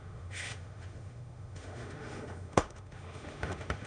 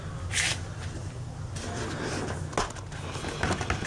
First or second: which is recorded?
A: second